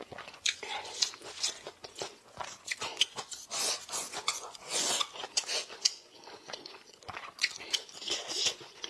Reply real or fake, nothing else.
fake